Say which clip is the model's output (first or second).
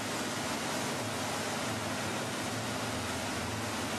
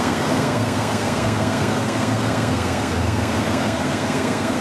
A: second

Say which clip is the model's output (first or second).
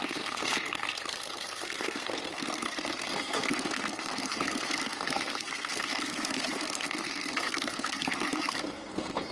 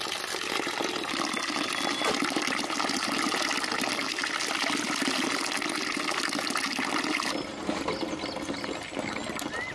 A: first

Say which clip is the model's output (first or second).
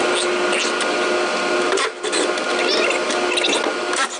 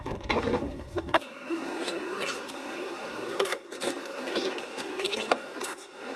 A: second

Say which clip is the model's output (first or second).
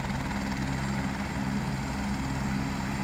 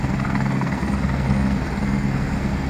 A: second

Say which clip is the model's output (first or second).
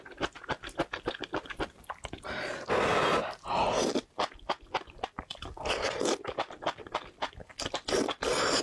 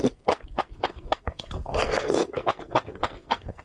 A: second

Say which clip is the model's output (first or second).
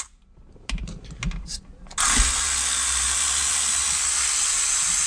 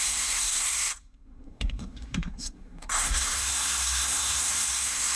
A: second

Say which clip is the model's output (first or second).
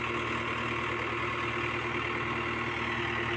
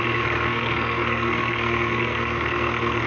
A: second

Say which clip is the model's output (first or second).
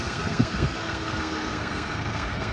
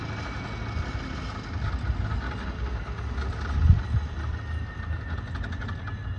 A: first